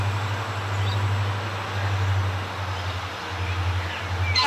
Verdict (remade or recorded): recorded